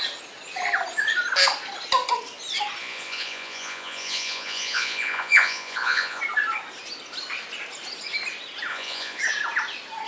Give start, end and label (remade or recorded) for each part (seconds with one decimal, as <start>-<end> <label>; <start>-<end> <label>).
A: 0.0-2.8 recorded; 2.8-6.2 remade; 6.2-8.7 recorded; 8.7-9.2 remade; 9.2-10.1 recorded